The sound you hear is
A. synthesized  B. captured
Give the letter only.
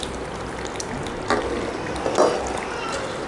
B